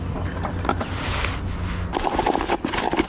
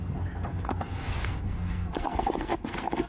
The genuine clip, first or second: first